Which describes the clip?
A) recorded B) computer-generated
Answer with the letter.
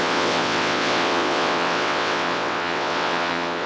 B